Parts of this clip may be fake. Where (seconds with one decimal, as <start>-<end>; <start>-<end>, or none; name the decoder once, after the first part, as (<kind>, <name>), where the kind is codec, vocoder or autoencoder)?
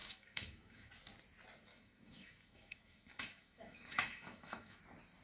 0.0-0.9 (autoencoder, DAC-VAE); 1.7-4.8